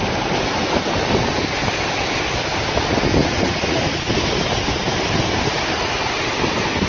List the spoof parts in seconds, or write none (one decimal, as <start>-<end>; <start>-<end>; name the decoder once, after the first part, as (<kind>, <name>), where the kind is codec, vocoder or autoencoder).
3.2-4.1 (vocoder, Vocos)